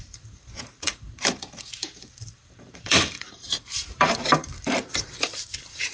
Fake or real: fake